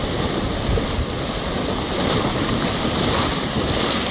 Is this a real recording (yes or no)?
yes